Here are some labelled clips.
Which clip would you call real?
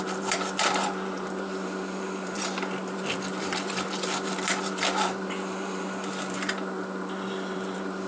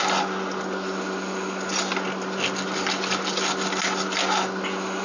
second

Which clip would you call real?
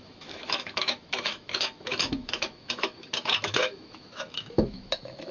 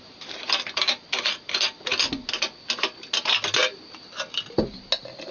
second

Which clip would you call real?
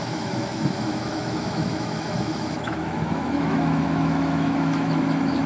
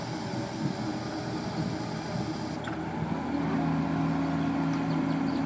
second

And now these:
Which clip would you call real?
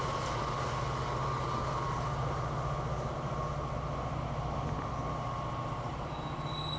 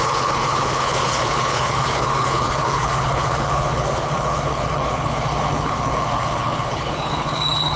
first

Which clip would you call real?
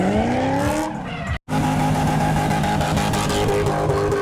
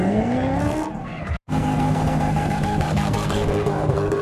first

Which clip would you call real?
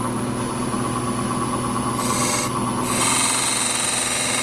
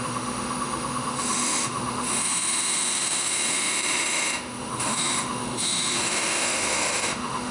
first